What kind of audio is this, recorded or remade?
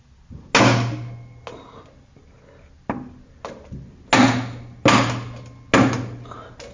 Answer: recorded